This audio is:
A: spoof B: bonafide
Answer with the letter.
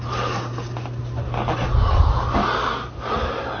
B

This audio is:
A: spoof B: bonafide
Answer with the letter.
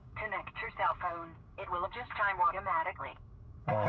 A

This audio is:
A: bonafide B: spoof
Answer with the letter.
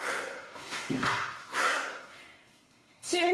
B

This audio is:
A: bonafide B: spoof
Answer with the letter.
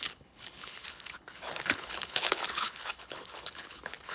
B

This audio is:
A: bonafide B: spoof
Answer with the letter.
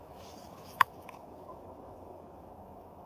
B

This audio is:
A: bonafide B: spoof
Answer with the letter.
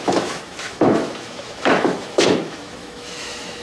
B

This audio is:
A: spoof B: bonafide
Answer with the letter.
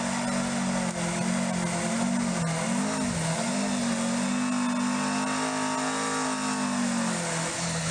B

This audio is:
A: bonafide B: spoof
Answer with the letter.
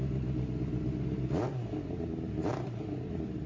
A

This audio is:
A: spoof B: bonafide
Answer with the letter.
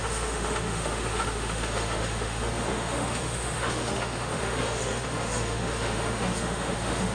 A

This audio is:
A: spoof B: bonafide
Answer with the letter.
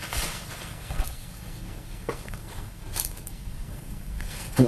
A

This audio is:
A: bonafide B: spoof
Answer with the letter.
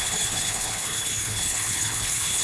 B